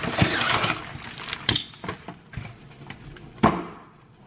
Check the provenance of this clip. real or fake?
real